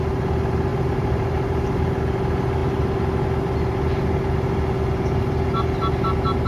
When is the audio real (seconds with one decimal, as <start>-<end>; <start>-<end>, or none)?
0.0-0.7; 1.9-6.5